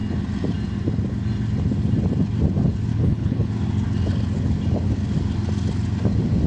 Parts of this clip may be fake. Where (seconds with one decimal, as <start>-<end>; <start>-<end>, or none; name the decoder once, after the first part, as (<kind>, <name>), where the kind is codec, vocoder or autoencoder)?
2.9-3.5 (codec, HILCodec)